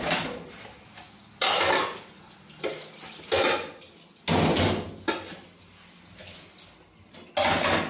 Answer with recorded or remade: recorded